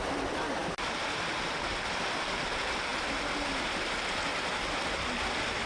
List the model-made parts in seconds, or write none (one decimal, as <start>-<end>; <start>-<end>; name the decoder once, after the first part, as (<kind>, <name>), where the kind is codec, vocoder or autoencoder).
none